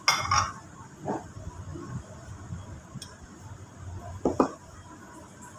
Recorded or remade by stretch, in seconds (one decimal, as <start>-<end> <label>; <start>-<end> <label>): 0.0-5.6 recorded